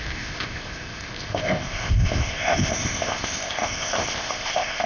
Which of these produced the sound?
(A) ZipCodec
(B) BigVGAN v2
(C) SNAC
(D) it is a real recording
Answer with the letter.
A